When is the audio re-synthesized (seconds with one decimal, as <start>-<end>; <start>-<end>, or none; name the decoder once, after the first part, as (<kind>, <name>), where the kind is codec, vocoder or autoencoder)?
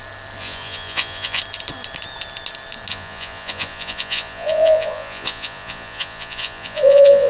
0.4-1.4 (vocoder, Vocos); 2.9-7.3